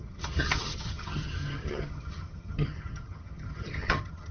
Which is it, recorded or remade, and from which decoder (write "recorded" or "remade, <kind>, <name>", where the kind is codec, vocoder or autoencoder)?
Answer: remade, vocoder, HiFi-GAN